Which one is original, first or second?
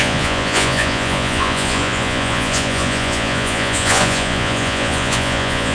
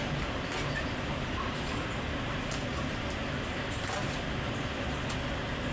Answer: second